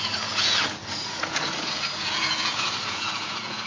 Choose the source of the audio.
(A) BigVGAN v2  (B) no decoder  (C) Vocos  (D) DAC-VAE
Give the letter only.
C